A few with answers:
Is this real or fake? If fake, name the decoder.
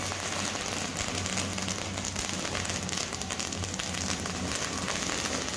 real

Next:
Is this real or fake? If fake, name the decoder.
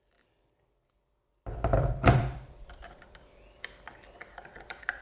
fake, vocoder, BigVGAN v2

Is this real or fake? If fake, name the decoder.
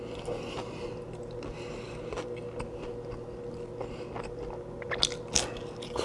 real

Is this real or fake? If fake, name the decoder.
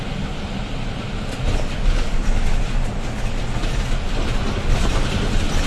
real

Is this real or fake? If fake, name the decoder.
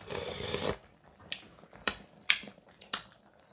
fake, vocoder, BigVGAN v2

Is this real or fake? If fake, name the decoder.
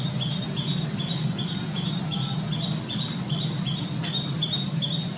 real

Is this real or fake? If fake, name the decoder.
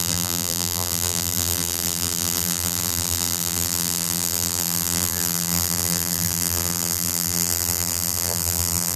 fake, vocoder, BigVGAN v2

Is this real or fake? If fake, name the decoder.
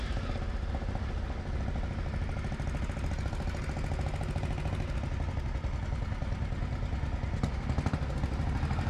real